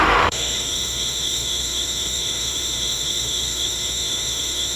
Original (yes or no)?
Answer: no